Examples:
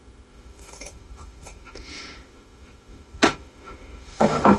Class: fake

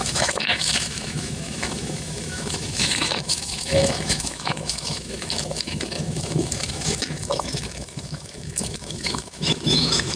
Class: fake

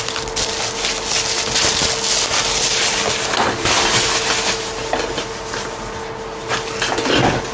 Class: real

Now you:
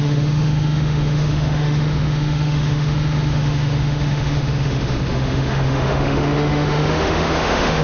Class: fake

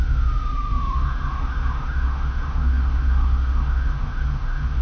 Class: fake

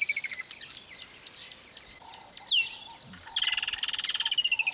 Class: real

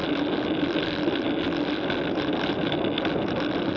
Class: real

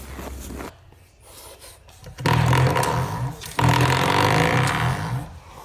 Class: real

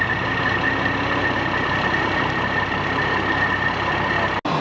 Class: real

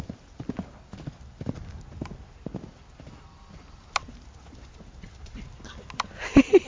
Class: real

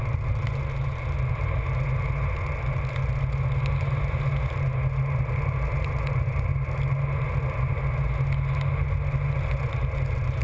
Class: real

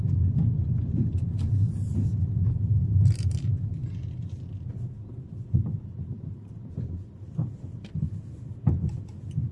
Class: real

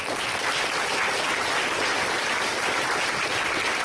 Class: real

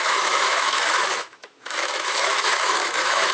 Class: fake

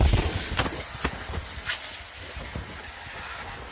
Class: real